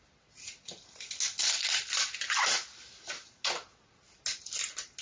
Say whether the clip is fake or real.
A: real